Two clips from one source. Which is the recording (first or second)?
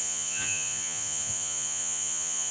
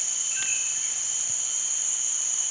second